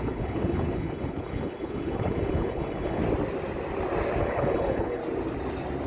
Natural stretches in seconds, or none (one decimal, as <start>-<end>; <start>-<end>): 3.0-4.2; 5.0-5.9